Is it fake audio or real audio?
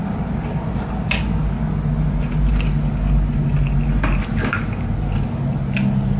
real